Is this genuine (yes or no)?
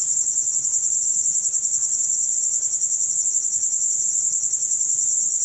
no